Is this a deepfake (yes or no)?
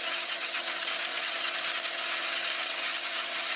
yes